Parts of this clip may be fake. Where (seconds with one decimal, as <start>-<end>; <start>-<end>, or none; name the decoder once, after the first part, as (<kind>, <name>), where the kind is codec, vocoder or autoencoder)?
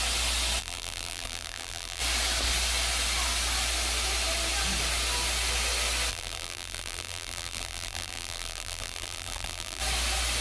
0.6-2.0 (vocoder, BigVGAN v2); 6.1-9.8